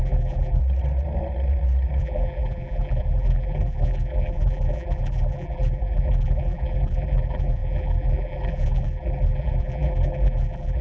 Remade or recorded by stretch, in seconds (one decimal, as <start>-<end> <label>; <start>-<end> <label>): 0.0-0.6 remade; 0.6-2.0 recorded; 2.0-10.8 remade